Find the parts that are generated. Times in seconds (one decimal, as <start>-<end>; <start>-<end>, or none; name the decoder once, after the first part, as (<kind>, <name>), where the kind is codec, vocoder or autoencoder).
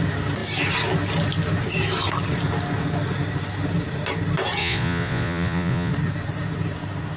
4.6-5.9 (vocoder, Vocos)